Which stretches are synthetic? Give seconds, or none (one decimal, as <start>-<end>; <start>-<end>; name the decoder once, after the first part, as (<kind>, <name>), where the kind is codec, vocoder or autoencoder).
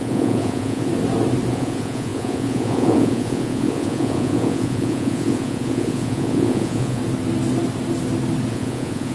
0.0-0.9 (vocoder, Vocos); 1.5-7.0; 8.5-9.1